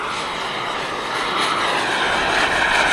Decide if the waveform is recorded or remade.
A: remade